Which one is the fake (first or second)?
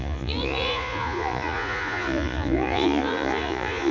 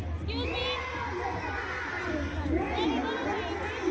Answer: first